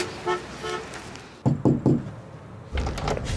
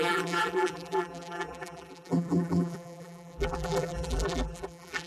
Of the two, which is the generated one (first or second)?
second